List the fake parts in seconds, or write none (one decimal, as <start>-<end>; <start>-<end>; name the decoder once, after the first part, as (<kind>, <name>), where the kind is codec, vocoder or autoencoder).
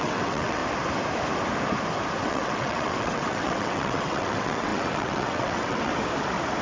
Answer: 0.0-0.6 (vocoder, WaveNeXt); 2.2-5.9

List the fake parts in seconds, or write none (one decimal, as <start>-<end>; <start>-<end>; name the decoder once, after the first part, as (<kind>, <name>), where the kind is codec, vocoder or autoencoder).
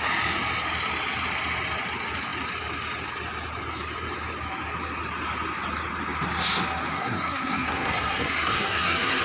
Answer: 6.9-9.2 (codec, SNAC)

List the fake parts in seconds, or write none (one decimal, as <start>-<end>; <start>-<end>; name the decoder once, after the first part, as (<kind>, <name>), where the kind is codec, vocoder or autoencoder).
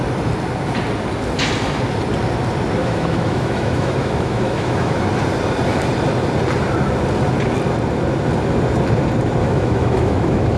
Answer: 2.8-5.0 (autoencoder, DAC-VAE); 9.4-10.6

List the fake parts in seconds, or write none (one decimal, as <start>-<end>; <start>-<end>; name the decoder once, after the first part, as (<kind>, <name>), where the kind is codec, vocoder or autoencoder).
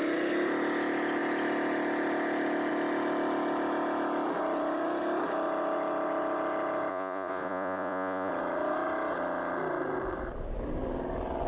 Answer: 6.9-8.3 (vocoder, Vocos)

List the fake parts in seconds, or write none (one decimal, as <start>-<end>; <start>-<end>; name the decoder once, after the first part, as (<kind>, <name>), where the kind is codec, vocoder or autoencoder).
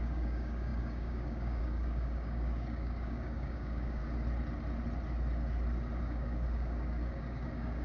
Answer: 0.0-4.0 (codec, DAC); 6.0-7.8